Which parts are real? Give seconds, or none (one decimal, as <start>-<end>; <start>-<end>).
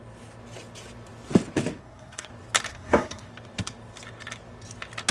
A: 0.0-1.8; 2.3-2.7; 3.3-5.1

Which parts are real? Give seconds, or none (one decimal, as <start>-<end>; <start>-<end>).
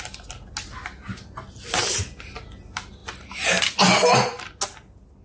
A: 0.0-5.2